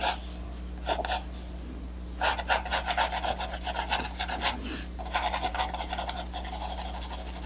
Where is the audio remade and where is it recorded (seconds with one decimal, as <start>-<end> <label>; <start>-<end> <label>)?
0.0-7.5 recorded